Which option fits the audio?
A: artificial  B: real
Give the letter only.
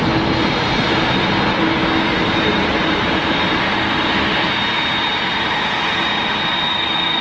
B